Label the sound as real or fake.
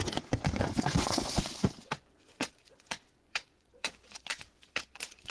fake